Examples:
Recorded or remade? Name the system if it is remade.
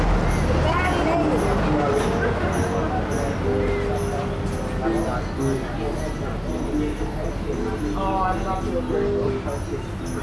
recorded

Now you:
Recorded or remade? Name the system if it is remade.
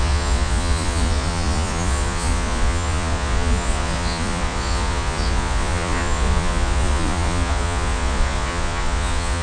remade, vocoder, Vocos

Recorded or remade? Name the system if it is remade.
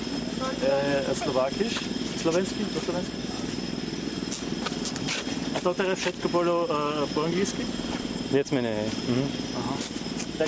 recorded